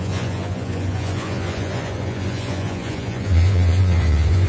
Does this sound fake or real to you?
fake